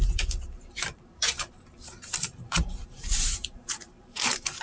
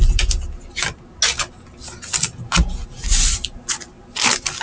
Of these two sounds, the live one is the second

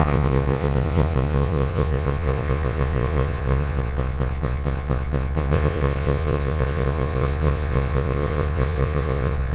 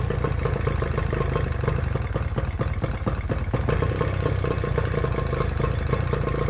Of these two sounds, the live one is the second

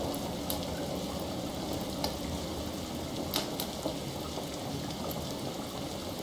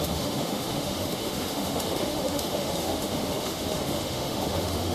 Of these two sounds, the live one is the first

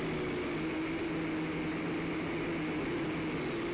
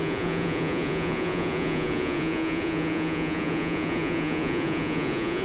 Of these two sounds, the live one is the first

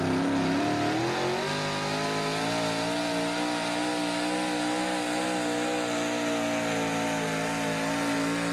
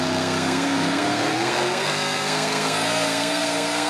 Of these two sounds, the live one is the first